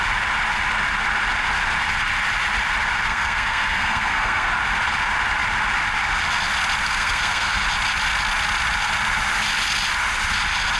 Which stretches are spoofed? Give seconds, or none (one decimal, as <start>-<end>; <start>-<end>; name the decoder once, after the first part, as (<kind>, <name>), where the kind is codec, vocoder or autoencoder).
3.1-4.5 (codec, SNAC); 6.8-7.6